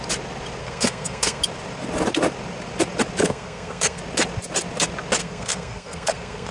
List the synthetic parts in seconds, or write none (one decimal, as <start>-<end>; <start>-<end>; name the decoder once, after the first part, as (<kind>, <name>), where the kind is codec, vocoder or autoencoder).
0.6-1.4 (codec, SNAC); 3.2-4.0; 5.2-6.5